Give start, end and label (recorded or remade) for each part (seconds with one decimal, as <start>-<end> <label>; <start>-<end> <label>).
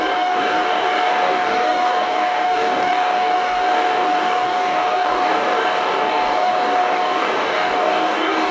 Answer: 0.0-8.5 remade